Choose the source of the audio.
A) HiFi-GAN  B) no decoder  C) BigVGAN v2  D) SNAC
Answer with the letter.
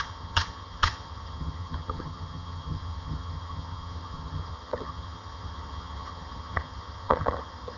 A